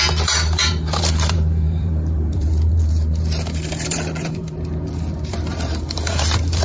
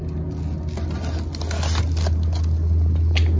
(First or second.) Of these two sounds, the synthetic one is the first